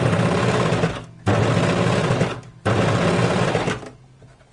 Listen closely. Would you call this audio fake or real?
real